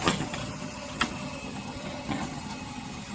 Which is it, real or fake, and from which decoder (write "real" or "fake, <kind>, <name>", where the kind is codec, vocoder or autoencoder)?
fake, vocoder, HiFi-GAN